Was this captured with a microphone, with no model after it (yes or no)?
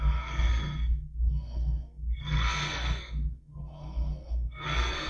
no